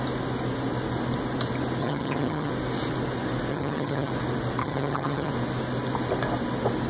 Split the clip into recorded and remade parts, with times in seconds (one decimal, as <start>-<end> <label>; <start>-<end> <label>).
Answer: 0.0-1.8 recorded; 1.8-2.5 remade; 2.5-3.5 recorded; 3.5-4.1 remade; 4.1-4.6 recorded; 4.6-5.3 remade; 5.3-6.9 recorded